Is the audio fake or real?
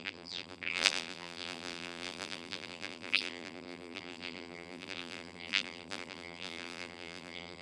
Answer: fake